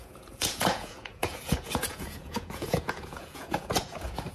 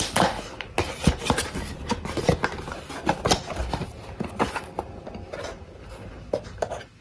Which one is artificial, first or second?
first